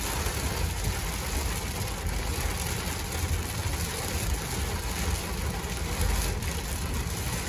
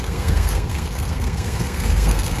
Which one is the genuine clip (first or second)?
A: first